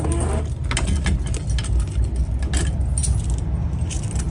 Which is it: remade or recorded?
recorded